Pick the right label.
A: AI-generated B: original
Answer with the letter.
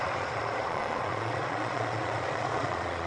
A